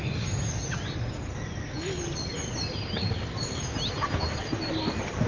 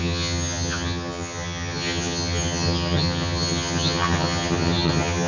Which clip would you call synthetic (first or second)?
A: second